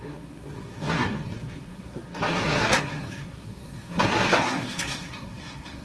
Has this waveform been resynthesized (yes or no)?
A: yes